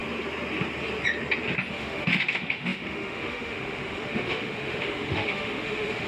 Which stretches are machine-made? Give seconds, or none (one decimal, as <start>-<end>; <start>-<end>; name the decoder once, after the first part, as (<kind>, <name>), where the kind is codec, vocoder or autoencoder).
1.7-6.1 (autoencoder, DAC-VAE)